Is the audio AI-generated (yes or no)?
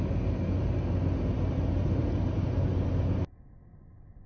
no